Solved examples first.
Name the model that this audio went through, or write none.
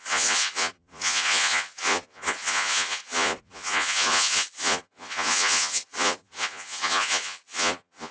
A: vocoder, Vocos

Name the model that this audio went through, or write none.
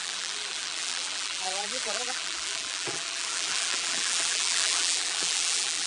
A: vocoder, BigVGAN v2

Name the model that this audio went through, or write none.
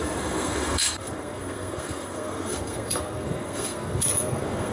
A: codec, SNAC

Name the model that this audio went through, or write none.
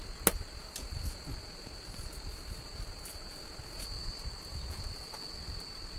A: none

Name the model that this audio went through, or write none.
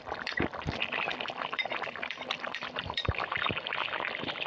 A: vocoder, BigVGAN v2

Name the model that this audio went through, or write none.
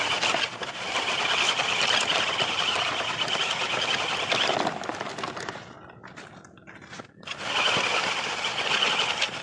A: none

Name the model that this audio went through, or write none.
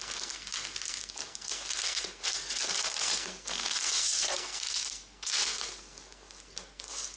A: codec, SNAC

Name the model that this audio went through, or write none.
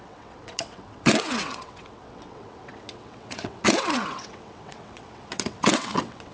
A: vocoder, WaveNeXt